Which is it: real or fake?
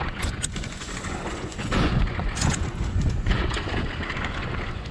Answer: fake